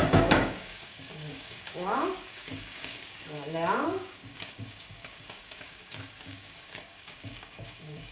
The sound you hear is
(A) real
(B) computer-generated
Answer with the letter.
B